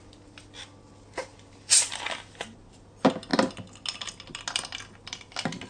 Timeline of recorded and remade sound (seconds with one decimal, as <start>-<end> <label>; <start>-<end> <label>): 0.0-5.7 recorded